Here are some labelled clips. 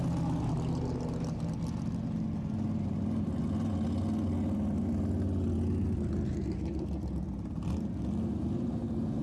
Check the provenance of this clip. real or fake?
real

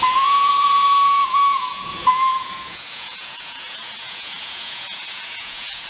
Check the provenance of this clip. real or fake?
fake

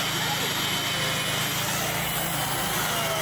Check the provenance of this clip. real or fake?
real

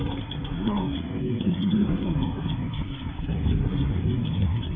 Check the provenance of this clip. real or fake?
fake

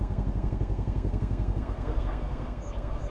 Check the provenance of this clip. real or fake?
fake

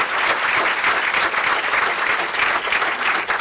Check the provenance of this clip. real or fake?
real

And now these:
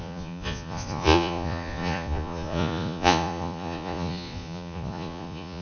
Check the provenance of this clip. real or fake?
fake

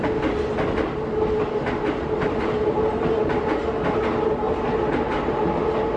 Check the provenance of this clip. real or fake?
real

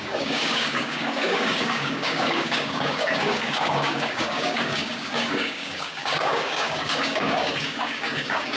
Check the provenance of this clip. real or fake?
fake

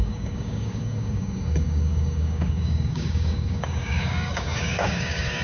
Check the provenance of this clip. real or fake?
fake